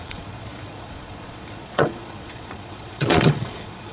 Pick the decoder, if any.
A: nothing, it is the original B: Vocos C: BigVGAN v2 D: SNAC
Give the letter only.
B